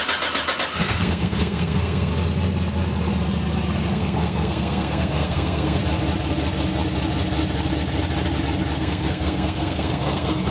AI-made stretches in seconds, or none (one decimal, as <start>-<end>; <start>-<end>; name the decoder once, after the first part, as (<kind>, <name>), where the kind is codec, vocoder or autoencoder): 0.8-2.1 (codec, SNAC); 3.9-5.8; 8.8-10.5